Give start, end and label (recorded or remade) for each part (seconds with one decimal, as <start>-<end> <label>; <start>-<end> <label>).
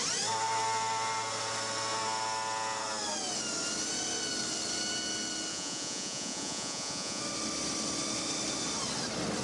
0.0-5.5 recorded; 5.5-7.2 remade; 7.2-9.4 recorded